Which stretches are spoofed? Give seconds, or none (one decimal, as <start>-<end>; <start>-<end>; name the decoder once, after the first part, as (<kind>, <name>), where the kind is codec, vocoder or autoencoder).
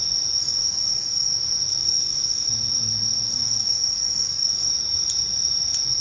0.4-1.3 (codec, DAC); 1.8-2.5; 3.3-4.7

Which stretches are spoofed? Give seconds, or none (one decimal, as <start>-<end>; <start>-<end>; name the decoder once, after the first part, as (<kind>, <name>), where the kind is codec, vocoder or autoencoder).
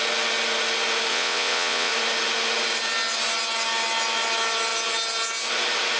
1.1-1.9 (vocoder, WaveNeXt)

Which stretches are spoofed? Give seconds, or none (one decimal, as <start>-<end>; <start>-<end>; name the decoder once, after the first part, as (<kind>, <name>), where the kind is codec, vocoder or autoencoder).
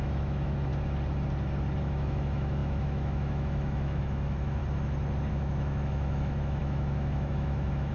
0.0-0.7 (autoencoder, DAC-VAE); 1.8-4.6; 5.3-7.9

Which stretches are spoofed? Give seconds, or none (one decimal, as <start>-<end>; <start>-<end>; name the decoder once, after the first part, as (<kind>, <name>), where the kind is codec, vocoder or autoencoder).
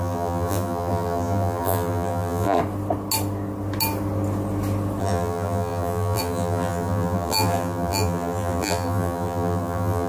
0.0-2.6 (vocoder, BigVGAN v2); 5.0-10.1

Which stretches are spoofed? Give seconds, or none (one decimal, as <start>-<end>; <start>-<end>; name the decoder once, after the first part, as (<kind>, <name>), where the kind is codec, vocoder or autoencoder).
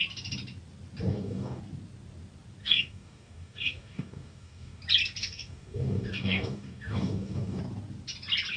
1.1-1.6 (codec, DAC); 2.6-4.8; 5.2-7.6